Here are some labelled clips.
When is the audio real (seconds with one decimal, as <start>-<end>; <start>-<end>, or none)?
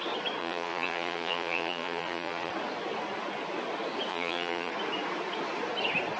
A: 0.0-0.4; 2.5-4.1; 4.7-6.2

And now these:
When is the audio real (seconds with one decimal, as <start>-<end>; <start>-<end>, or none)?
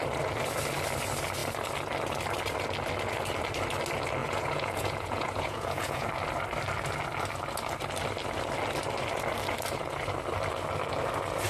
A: 0.0-4.2; 6.1-11.5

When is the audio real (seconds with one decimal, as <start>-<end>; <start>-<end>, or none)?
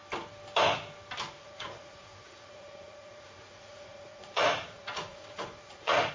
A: 0.0-1.4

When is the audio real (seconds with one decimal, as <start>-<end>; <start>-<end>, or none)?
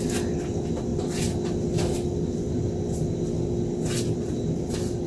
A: 0.0-5.1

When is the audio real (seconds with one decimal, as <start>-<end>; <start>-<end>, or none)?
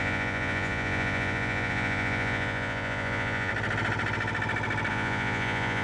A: 3.5-4.9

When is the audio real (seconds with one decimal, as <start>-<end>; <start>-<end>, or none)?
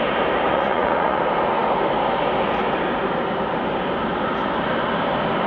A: 0.0-0.5; 1.2-5.5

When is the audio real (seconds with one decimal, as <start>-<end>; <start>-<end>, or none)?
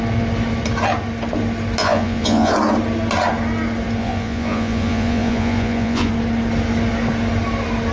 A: 0.0-1.8; 2.5-4.0; 6.1-7.9